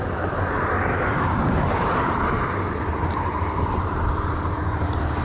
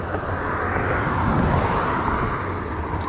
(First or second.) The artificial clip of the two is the first